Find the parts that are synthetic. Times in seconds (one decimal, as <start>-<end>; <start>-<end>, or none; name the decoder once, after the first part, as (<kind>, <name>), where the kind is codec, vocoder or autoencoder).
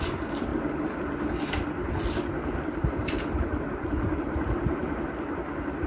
0.0-0.5 (vocoder, BigVGAN v2); 1.5-4.6; 5.1-5.9